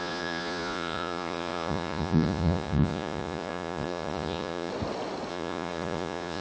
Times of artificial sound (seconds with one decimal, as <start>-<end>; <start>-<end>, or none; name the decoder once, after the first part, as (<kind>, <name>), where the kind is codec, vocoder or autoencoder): 0.0-4.7 (vocoder, Vocos); 5.3-6.4

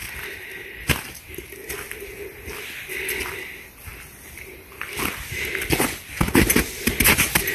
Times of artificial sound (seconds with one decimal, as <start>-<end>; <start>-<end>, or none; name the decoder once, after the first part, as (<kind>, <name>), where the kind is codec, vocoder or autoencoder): none

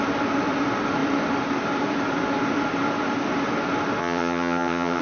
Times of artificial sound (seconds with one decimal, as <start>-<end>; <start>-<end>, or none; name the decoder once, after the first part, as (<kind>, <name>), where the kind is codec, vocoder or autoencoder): 4.0-5.0 (vocoder, HiFi-GAN)

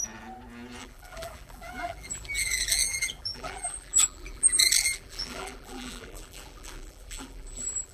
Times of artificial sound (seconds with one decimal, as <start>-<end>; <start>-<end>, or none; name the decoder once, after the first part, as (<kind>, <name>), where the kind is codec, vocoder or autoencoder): 0.8-7.9 (vocoder, BigVGAN v2)

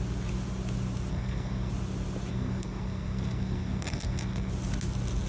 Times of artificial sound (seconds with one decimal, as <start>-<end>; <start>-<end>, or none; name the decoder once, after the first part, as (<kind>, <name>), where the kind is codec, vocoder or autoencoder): 1.1-1.7 (codec, SNAC); 2.3-4.5